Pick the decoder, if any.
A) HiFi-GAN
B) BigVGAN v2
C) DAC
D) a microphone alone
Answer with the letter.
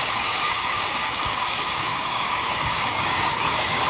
C